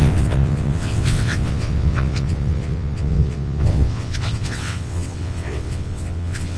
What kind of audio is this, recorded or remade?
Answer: remade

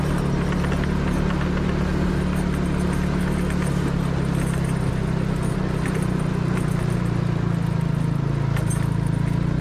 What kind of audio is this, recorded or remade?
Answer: recorded